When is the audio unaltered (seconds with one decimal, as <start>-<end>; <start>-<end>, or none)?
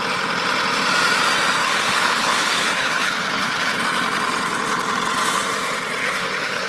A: 0.0-1.6; 3.8-6.0